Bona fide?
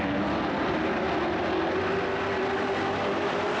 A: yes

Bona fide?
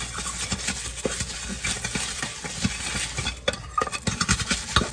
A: yes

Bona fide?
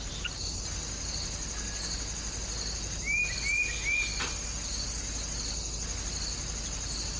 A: yes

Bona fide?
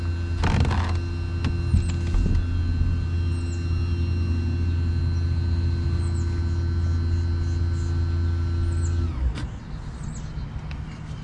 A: yes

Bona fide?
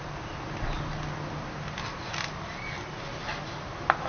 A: yes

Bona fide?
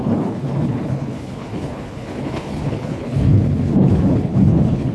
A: no